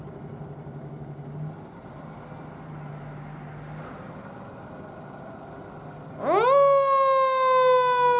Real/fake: real